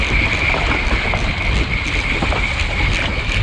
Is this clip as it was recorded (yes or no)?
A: yes